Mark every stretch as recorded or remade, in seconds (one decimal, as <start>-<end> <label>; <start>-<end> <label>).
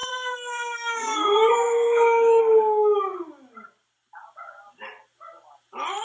0.0-2.4 remade; 2.4-6.0 recorded